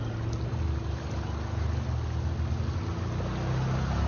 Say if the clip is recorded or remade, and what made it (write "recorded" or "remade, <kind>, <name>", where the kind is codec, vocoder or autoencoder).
recorded